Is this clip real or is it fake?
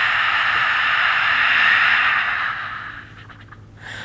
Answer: real